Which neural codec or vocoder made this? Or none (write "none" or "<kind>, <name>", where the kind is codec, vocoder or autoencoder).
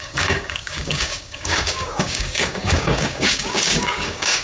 codec, DAC